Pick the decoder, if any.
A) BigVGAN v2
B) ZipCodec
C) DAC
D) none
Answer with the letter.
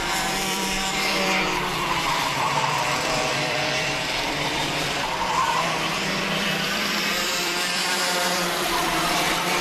A